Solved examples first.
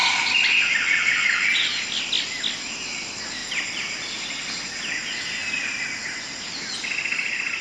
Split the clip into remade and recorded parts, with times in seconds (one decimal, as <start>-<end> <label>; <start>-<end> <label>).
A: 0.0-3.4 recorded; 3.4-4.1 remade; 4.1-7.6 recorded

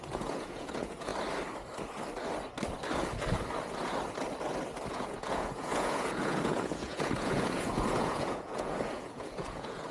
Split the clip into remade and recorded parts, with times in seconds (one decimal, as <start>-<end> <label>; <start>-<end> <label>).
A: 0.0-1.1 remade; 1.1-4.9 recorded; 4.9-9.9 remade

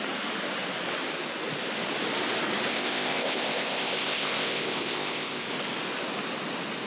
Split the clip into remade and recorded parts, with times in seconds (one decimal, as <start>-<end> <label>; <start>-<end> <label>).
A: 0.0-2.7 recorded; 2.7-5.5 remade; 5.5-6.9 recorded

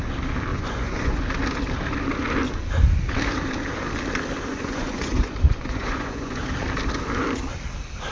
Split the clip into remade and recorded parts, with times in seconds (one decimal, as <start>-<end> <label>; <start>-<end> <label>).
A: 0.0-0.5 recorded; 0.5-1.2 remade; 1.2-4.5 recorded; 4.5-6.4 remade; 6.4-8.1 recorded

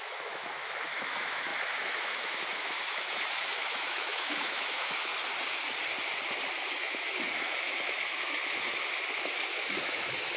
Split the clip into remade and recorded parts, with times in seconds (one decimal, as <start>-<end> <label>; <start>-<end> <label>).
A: 0.0-5.1 remade; 5.1-6.7 recorded; 6.7-8.8 remade; 8.8-9.3 recorded; 9.3-10.4 remade

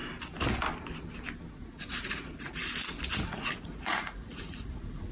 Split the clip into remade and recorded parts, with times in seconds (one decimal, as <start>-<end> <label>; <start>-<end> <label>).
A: 0.0-1.5 recorded; 1.5-2.6 remade; 2.6-3.3 recorded; 3.3-5.1 remade

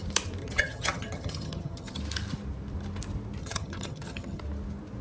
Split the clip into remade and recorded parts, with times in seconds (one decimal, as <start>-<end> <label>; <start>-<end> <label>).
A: 0.0-0.4 recorded; 0.4-2.0 remade; 2.0-3.4 recorded; 3.4-4.4 remade; 4.4-5.0 recorded

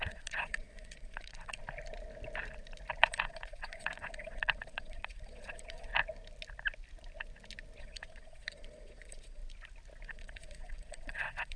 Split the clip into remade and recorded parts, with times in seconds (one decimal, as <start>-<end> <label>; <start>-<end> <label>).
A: 0.0-1.6 remade; 1.6-3.0 recorded; 3.0-5.9 remade; 5.9-7.8 recorded; 7.8-9.4 remade; 9.4-10.1 recorded; 10.1-11.6 remade